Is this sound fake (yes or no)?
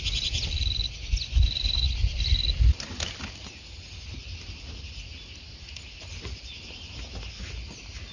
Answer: no